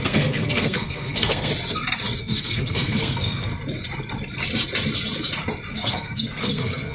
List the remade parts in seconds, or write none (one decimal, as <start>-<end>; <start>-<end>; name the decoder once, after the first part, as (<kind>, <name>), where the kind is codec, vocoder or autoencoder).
0.0-1.5 (codec, SNAC); 2.2-3.5; 5.7-6.9